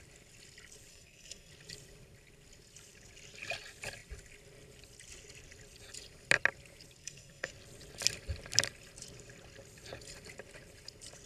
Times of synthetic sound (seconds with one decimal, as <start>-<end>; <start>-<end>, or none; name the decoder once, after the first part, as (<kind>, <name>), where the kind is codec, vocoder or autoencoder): 0.9-1.5 (codec, SNAC); 7.0-7.5